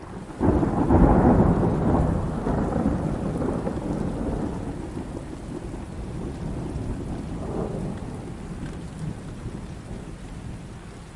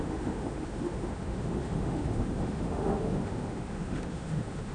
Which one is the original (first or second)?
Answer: first